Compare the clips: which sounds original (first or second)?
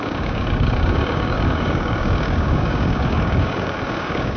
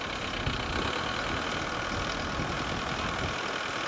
second